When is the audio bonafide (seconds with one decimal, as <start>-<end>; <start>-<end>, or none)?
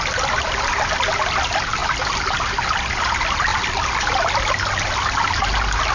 0.0-5.9